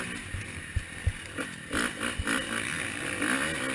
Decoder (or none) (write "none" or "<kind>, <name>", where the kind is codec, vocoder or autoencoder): none